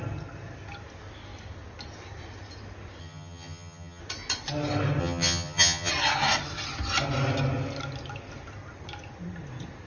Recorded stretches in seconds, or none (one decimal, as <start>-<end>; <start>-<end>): 0.0-3.0; 4.0-5.0; 5.9-9.9